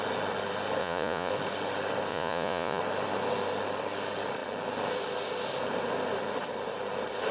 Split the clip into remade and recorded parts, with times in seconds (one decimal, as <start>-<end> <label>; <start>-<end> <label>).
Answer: 0.0-0.8 recorded; 0.8-1.3 remade; 1.3-2.1 recorded; 2.1-2.8 remade; 2.8-7.3 recorded